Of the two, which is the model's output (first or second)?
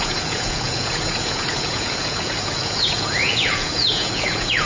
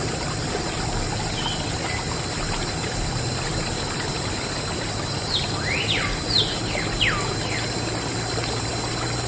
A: first